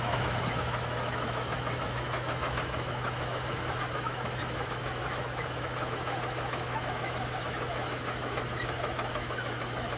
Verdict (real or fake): fake